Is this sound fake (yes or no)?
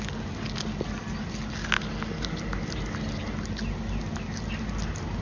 no